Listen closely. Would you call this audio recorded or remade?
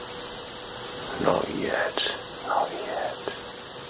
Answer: recorded